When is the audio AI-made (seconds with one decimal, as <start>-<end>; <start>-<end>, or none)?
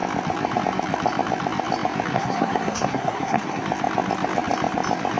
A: 2.1-3.6